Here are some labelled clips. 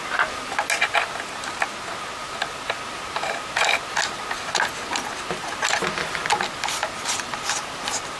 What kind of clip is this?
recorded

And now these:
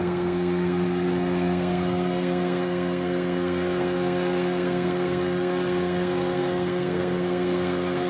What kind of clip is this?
remade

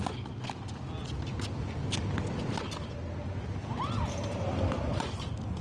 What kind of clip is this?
recorded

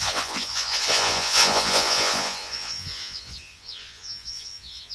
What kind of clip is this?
remade